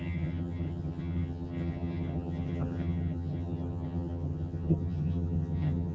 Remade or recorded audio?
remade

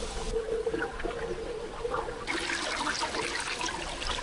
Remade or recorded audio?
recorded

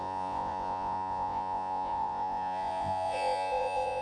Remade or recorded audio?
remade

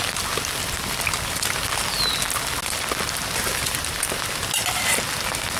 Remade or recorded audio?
recorded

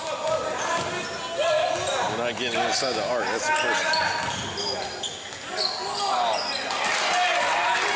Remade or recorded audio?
recorded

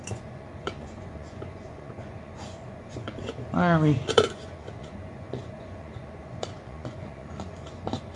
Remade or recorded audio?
remade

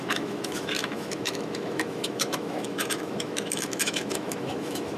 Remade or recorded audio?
remade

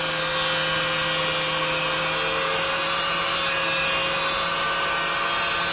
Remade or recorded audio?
recorded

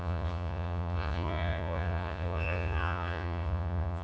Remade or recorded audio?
remade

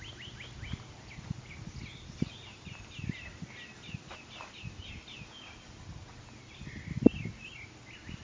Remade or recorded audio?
recorded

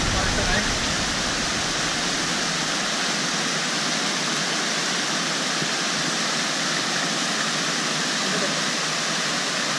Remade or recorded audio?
recorded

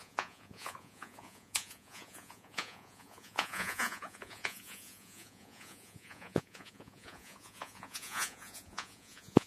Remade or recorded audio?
remade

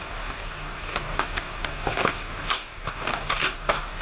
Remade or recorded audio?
remade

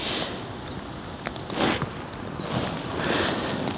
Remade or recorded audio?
recorded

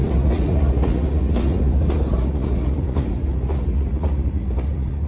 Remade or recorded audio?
remade